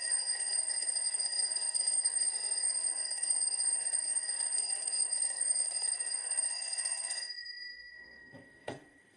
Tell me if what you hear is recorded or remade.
remade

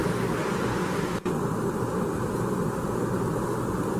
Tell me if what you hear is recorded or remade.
recorded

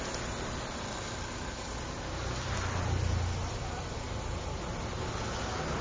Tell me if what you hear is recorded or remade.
recorded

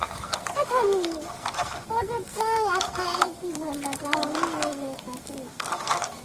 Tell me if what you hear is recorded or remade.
remade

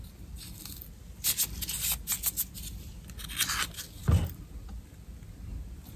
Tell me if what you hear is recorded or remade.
recorded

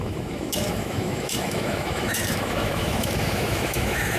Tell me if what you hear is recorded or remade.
remade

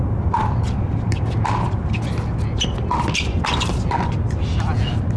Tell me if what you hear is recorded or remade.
recorded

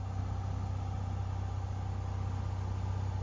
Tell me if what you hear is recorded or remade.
recorded